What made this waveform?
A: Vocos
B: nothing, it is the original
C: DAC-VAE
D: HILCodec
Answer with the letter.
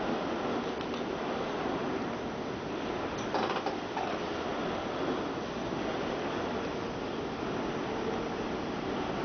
B